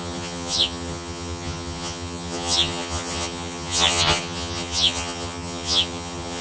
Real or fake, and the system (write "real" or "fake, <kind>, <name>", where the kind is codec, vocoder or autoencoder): fake, vocoder, HiFi-GAN